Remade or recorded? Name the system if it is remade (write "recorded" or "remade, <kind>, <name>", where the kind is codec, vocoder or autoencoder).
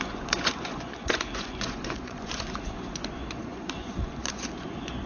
remade, vocoder, Vocos